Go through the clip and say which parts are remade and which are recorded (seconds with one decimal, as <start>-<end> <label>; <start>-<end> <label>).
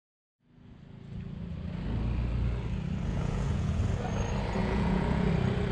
0.0-3.1 recorded; 3.1-3.8 remade; 3.8-4.6 recorded; 4.6-5.3 remade; 5.3-5.7 recorded